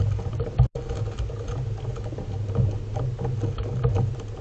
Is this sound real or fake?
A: real